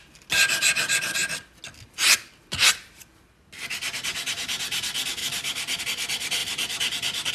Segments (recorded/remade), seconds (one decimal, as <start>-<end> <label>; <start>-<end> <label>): 0.0-6.4 recorded; 6.4-7.3 remade